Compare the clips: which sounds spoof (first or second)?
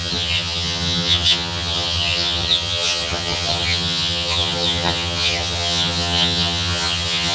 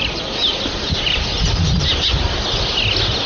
first